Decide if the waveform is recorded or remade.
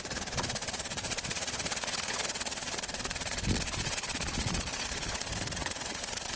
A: remade